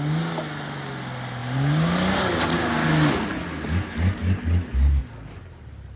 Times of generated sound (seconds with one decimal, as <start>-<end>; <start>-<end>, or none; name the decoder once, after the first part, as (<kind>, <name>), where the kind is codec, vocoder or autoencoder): none